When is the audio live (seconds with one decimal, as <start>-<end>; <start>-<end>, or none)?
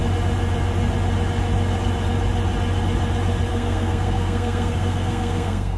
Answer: 0.0-3.5